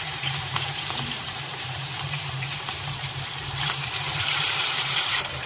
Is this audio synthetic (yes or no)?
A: yes